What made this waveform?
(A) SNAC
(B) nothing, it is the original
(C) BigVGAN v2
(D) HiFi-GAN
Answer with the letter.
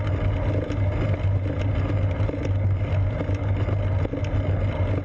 B